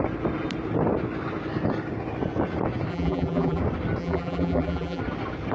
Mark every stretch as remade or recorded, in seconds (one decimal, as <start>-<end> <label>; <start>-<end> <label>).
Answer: 0.0-2.9 recorded; 2.9-3.6 remade; 3.6-4.0 recorded; 4.0-5.0 remade; 5.0-5.5 recorded